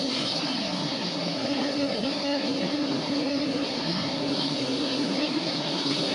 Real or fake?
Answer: fake